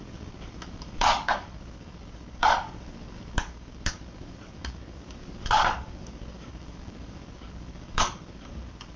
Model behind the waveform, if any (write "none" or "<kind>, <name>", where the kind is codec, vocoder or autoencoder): codec, DAC